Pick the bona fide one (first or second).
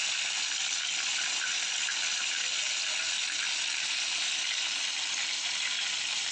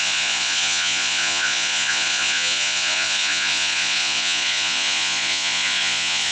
first